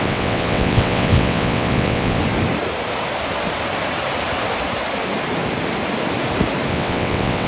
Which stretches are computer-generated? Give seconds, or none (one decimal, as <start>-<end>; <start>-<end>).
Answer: 0.0-2.2; 6.7-7.5